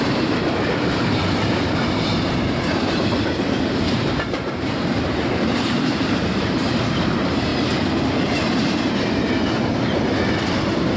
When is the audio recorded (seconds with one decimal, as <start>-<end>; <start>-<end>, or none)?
7.5-11.0